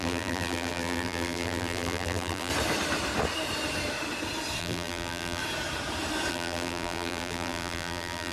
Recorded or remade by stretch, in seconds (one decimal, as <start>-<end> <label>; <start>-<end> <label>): 0.0-2.5 remade; 2.5-4.6 recorded; 4.6-5.4 remade; 5.4-6.3 recorded; 6.3-8.3 remade